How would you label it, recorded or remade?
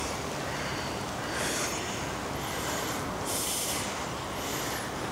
recorded